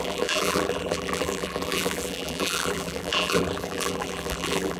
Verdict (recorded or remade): remade